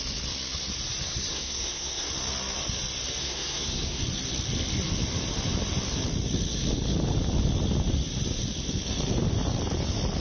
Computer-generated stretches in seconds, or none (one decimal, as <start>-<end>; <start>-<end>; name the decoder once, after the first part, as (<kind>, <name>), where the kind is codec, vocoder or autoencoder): 1.3-2.1 (codec, SNAC); 3.2-4.0